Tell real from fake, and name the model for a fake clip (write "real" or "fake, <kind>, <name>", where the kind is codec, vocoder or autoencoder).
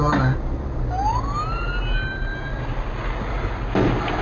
real